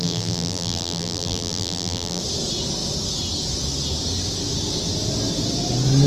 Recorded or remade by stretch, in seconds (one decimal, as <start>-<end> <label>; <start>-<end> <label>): 0.0-2.2 remade; 2.2-6.1 recorded